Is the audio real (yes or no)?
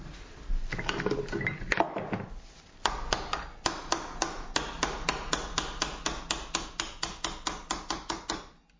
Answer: yes